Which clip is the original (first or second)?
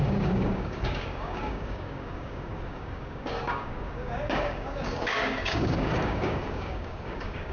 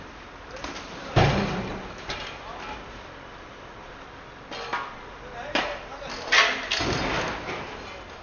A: second